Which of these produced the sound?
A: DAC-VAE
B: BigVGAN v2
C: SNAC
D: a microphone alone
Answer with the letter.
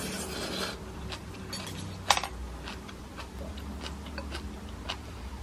D